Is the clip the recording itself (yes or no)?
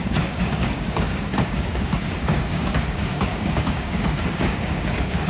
no